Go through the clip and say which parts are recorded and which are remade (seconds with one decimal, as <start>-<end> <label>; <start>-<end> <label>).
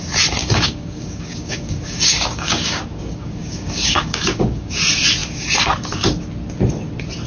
0.0-0.4 recorded; 0.4-4.8 remade; 4.8-7.3 recorded